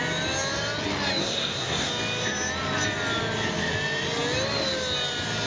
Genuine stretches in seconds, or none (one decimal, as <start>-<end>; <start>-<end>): 0.0-1.2; 1.9-5.5